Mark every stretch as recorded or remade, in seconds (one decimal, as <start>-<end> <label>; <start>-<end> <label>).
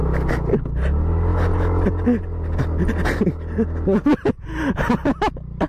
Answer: 0.0-5.7 recorded